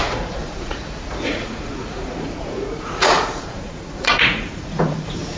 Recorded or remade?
remade